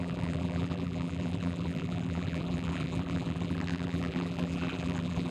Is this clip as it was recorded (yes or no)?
no